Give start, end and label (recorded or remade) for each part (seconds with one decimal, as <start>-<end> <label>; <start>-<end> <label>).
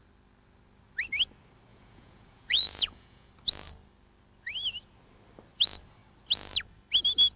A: 0.0-1.7 recorded; 1.7-3.3 remade; 3.3-7.4 recorded